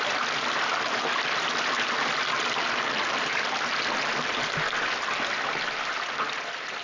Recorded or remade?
recorded